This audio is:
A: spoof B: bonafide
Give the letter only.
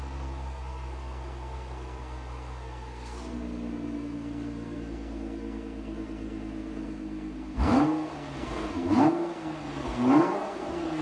A